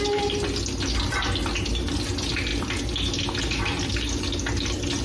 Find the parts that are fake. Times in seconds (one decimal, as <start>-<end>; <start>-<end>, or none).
none